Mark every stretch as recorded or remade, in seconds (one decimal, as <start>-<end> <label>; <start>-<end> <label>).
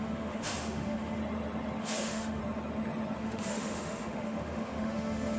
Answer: 0.0-1.2 remade; 1.2-1.8 recorded; 1.8-2.4 remade; 2.4-3.2 recorded; 3.2-5.4 remade